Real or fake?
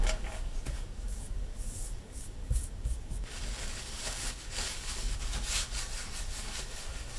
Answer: fake